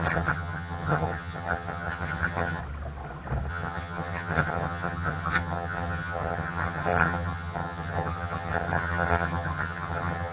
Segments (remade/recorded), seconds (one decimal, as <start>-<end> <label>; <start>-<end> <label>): 0.0-2.6 remade; 2.6-3.5 recorded; 3.5-10.3 remade